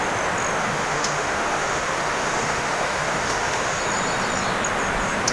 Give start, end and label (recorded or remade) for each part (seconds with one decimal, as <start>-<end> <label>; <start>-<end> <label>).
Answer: 0.0-0.6 recorded; 0.6-3.8 remade; 3.8-5.3 recorded